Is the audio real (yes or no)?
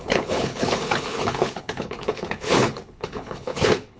no